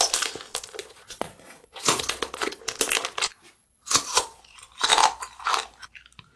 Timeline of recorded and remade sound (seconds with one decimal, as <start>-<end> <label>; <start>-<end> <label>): 0.0-0.8 recorded; 0.8-2.6 remade; 2.6-3.3 recorded; 3.3-4.4 remade; 4.4-6.4 recorded